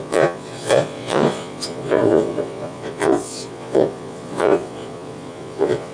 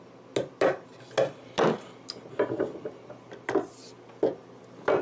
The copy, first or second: first